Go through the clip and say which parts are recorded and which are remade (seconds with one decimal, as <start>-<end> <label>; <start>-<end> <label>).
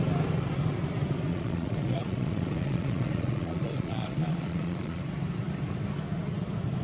0.0-1.3 recorded; 1.3-5.0 remade; 5.0-6.8 recorded